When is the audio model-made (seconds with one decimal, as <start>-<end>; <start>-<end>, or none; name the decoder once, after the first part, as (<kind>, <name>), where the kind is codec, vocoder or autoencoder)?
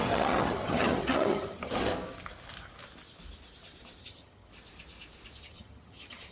0.0-1.9 (vocoder, HiFi-GAN); 4.0-4.5; 5.4-6.3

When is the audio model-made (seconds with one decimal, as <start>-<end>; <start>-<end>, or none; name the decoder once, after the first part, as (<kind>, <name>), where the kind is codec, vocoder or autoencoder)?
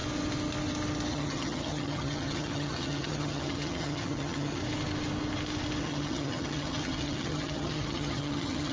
1.1-4.6 (vocoder, HiFi-GAN); 5.8-8.7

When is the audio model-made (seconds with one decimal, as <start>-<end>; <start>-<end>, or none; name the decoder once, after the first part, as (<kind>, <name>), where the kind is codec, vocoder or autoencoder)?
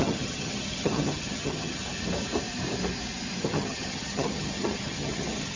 0.0-1.8 (vocoder, HiFi-GAN); 3.4-5.6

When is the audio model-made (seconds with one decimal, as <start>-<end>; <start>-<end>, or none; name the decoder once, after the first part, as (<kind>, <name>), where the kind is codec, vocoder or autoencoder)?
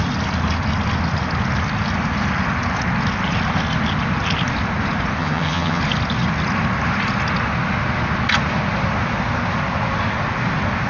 5.2-5.8 (vocoder, HiFi-GAN)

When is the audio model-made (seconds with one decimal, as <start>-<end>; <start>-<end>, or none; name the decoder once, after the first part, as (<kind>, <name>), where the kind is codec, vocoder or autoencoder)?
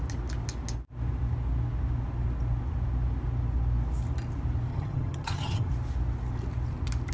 4.7-5.7 (vocoder, HiFi-GAN)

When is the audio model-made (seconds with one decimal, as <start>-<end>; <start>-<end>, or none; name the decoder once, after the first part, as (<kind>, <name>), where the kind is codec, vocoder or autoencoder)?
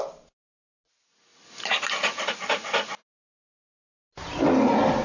none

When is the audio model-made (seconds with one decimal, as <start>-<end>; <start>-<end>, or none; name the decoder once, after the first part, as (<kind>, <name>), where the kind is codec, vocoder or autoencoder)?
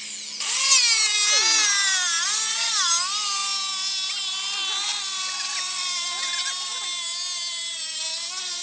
none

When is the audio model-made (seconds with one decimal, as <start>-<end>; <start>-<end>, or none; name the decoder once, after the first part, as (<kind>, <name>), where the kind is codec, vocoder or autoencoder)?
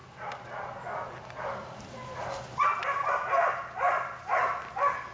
none